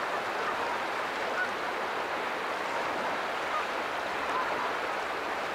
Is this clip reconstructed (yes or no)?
no